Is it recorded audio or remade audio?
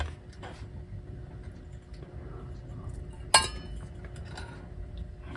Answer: recorded